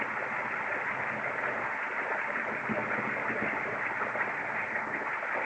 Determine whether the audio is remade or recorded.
recorded